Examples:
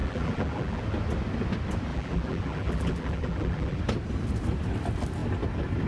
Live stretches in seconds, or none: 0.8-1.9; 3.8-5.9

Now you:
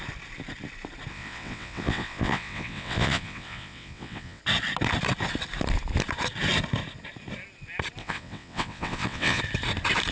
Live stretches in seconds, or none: 0.0-1.1; 4.4-8.0; 9.4-10.1

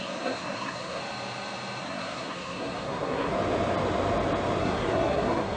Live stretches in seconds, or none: 1.0-1.8; 3.3-4.6

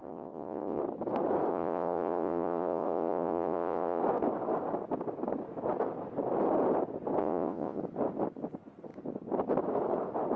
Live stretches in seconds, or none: 0.8-1.5; 4.0-7.2; 7.8-10.4

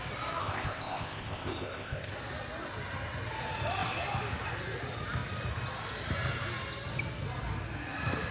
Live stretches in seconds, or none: 0.0-0.4; 2.1-8.3

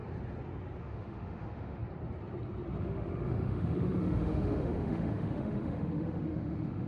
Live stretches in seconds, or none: 0.0-0.8; 1.8-2.8

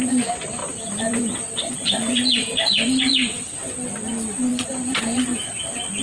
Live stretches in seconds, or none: 0.0-0.6; 1.7-4.5; 5.0-6.0